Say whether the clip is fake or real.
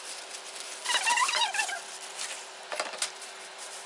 fake